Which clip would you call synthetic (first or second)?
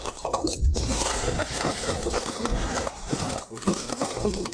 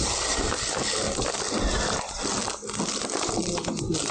first